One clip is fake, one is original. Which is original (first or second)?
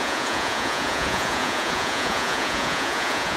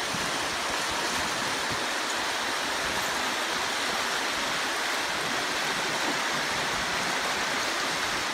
second